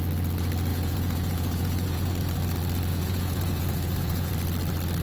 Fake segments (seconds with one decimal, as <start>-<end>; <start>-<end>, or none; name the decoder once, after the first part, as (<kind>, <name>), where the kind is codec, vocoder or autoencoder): 0.7-2.1 (vocoder, Vocos); 2.9-4.3